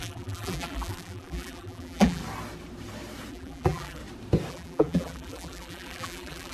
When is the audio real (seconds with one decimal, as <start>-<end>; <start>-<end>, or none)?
2.2-3.3; 4.0-4.5